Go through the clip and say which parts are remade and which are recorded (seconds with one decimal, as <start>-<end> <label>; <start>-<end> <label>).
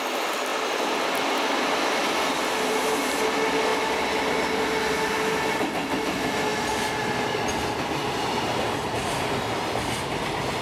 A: 0.0-10.6 recorded